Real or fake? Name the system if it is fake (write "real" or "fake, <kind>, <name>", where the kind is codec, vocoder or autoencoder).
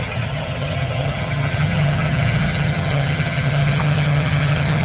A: fake, vocoder, HiFi-GAN